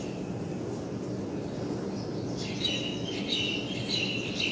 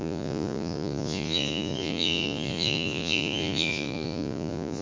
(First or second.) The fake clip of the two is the second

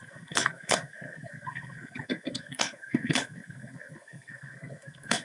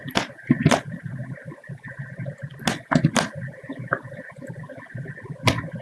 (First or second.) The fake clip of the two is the first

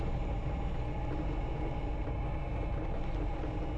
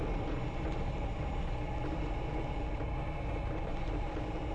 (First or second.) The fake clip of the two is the second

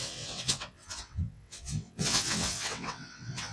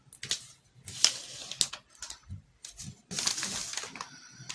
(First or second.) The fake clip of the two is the first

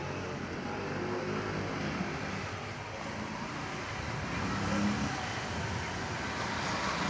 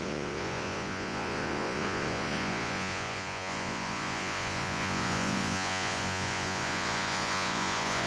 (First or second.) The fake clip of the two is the second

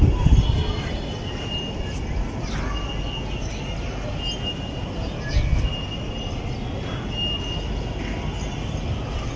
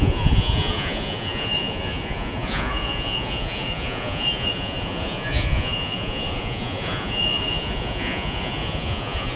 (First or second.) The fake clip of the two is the second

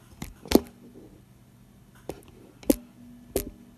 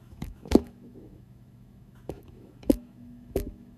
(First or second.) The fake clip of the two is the second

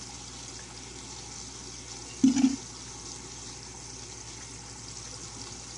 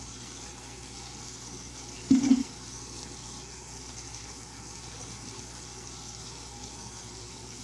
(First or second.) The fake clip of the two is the second